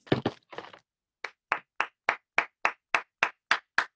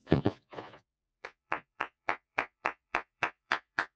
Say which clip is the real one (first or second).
first